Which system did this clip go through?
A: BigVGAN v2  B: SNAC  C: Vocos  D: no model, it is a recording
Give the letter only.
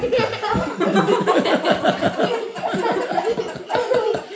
D